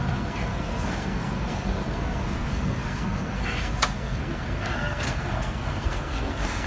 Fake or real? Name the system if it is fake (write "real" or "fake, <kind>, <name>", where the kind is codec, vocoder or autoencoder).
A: fake, codec, SNAC